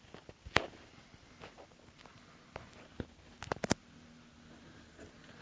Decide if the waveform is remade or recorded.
recorded